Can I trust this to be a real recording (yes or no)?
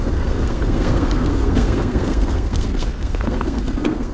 no